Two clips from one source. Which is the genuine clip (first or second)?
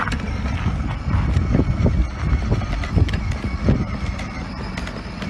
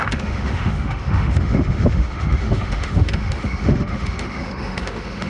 first